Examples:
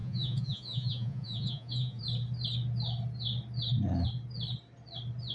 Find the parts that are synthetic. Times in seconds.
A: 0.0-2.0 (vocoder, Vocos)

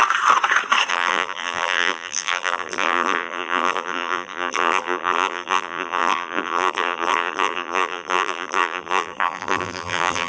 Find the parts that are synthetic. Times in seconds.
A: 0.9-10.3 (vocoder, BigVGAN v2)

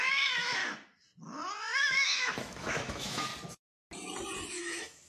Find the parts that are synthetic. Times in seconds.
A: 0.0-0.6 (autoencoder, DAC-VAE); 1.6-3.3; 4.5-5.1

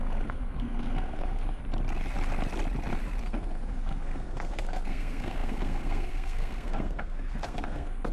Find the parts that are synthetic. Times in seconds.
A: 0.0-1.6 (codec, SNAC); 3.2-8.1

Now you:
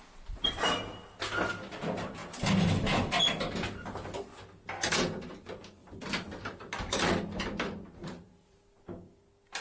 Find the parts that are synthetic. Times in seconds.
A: 5.8-8.6 (vocoder, BigVGAN v2)